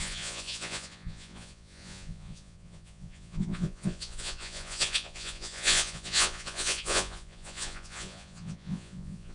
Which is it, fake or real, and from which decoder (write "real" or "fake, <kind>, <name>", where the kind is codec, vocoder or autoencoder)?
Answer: fake, vocoder, Vocos